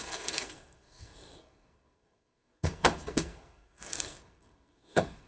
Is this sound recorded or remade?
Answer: remade